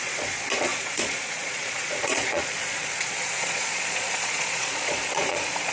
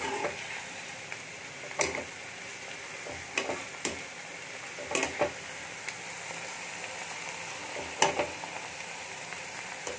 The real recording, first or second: second